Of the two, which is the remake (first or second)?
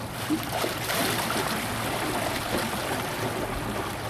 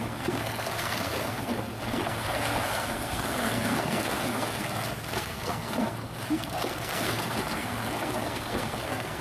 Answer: second